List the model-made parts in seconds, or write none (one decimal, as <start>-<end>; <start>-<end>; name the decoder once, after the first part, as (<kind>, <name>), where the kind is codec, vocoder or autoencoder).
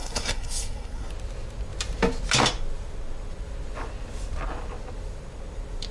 0.0-1.1 (codec, SNAC)